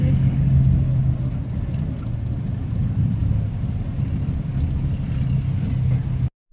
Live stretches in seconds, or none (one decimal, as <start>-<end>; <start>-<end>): 0.0-6.5